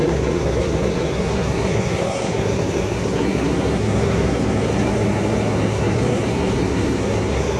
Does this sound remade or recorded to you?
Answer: remade